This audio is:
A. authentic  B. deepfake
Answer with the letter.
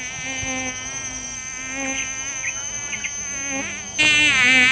A